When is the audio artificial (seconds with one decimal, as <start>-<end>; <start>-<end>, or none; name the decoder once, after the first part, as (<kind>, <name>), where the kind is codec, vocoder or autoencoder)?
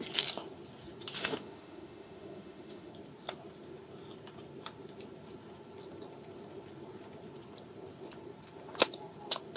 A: 1.2-2.9 (autoencoder, DAC-VAE)